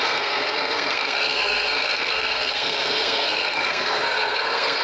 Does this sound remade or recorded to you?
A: remade